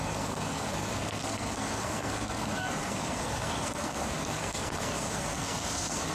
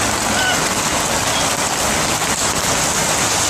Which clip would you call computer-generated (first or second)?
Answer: first